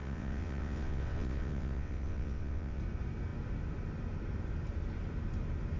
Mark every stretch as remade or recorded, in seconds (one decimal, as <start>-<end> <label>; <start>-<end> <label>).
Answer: 0.0-2.8 remade; 2.8-5.8 recorded